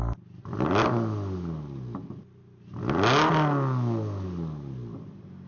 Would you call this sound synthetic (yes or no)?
no